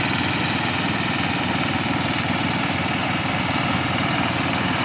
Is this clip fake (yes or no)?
no